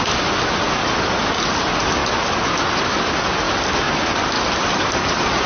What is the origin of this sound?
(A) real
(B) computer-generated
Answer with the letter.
A